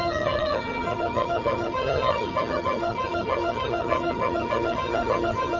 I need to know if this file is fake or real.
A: fake